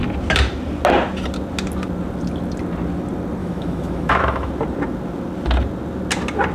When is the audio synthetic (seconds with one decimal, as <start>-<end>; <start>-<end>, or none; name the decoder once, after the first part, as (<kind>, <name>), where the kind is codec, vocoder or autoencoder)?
3.4-4.5 (autoencoder, DAC-VAE)